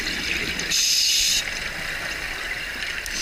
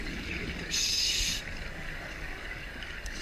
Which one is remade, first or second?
second